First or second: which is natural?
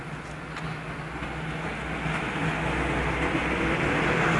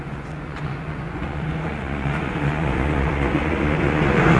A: first